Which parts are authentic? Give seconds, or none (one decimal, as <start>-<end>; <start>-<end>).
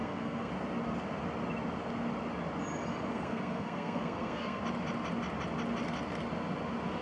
0.5-3.1; 4.6-7.0